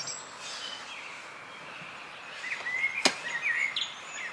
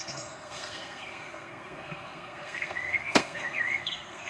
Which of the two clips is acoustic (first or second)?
first